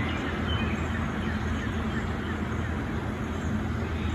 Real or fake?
real